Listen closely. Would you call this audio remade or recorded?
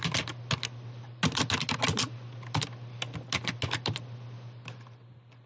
recorded